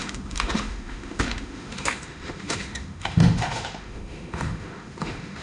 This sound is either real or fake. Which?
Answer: fake